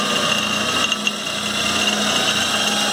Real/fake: real